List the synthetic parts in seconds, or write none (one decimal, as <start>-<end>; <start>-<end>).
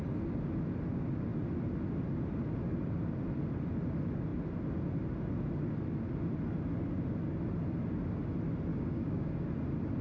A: 8.7-9.5